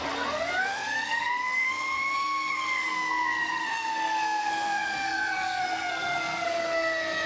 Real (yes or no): no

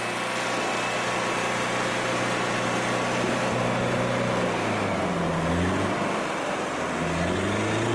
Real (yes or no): yes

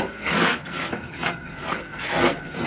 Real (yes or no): no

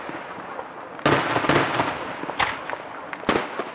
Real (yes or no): yes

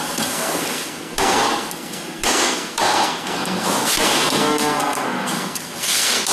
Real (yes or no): no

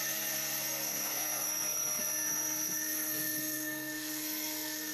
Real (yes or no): no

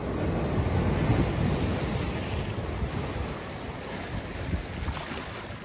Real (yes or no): yes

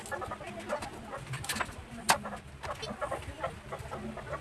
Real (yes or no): yes